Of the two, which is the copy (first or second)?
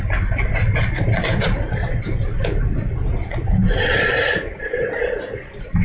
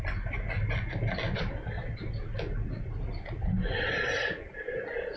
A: first